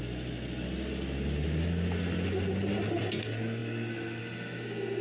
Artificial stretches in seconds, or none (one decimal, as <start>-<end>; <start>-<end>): none